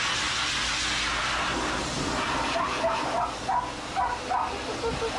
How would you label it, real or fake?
real